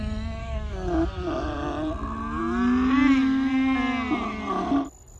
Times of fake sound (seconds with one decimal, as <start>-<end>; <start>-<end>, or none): 0.4-1.1